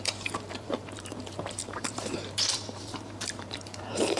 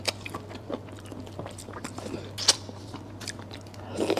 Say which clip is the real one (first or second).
second